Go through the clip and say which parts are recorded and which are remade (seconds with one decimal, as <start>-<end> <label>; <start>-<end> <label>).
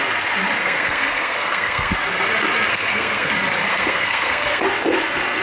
0.0-0.6 recorded; 0.6-1.9 remade; 1.9-2.7 recorded; 2.7-3.3 remade; 3.3-3.7 recorded; 3.7-4.6 remade; 4.6-5.4 recorded